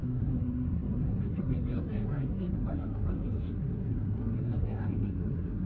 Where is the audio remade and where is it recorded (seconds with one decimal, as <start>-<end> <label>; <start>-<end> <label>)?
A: 0.0-5.7 remade